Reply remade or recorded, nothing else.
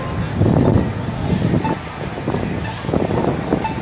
recorded